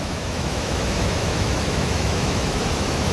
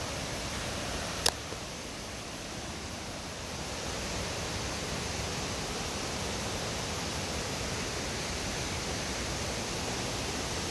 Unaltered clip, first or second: second